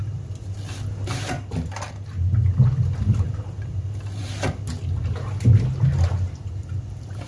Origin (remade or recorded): recorded